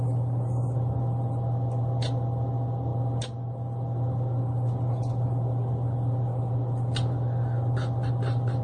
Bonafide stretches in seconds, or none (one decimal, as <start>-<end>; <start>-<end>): 0.0-8.6

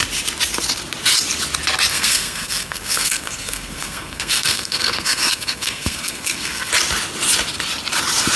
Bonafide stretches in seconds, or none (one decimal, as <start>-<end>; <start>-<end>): 0.0-1.9; 6.7-8.4